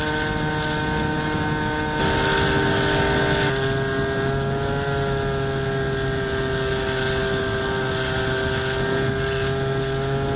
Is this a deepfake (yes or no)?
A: no